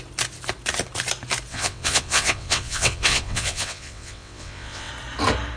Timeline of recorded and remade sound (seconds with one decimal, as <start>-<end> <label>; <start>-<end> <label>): 0.0-1.5 recorded; 1.5-4.9 remade; 4.9-5.6 recorded